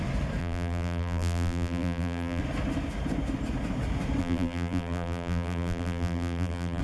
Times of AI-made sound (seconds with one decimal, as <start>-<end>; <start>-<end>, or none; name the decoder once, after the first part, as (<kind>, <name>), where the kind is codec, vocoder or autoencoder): 0.4-2.4 (vocoder, BigVGAN v2); 4.2-6.8